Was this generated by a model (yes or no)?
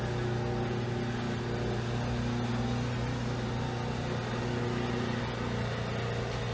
no